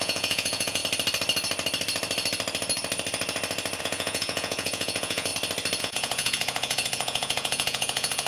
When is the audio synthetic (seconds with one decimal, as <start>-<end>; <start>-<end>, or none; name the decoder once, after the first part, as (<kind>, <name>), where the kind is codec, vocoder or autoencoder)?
0.0-0.8 (vocoder, Vocos); 3.8-5.3; 5.8-8.3